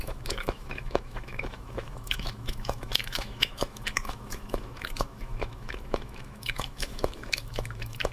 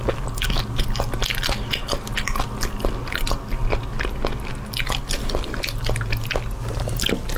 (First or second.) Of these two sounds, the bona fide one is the second